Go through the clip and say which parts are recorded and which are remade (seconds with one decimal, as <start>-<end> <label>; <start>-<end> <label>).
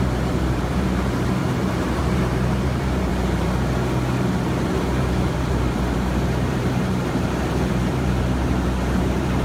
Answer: 0.0-3.1 remade; 3.1-4.5 recorded; 4.5-8.4 remade; 8.4-9.0 recorded; 9.0-9.4 remade